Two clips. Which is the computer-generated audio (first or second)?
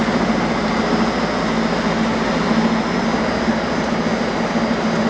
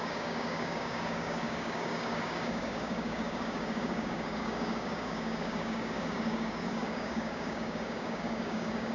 second